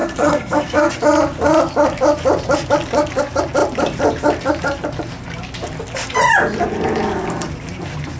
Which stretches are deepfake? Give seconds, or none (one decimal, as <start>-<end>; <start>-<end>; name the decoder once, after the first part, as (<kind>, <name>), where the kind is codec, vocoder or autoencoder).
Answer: 0.0-0.9 (codec, SNAC)